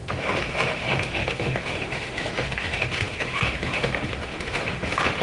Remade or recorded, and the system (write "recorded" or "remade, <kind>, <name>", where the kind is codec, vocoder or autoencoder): remade, autoencoder, DAC-VAE